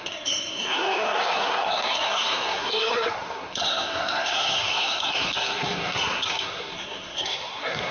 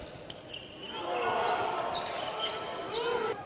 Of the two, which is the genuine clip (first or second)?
second